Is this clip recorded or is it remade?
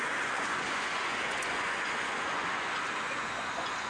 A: remade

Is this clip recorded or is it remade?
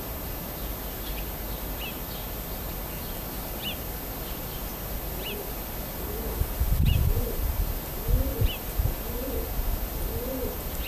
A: recorded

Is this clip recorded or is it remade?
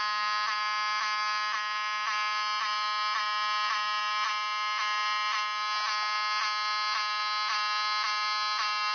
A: recorded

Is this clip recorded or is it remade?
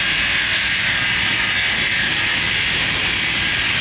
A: recorded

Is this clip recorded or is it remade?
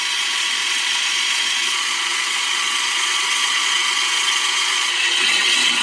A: remade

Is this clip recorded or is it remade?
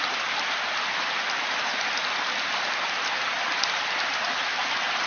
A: recorded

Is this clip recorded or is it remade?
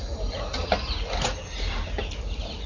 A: recorded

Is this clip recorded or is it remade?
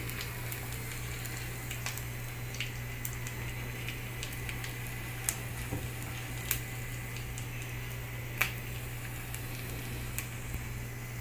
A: recorded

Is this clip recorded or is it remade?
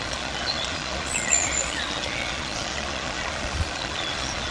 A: remade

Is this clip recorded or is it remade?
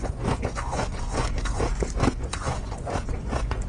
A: remade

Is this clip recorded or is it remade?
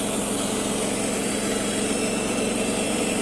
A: recorded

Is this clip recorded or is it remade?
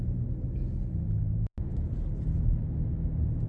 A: recorded